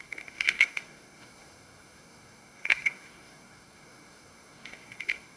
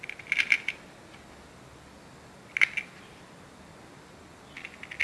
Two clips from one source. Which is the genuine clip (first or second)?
second